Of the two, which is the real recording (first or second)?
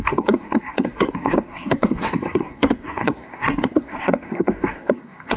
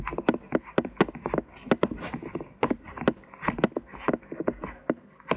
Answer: second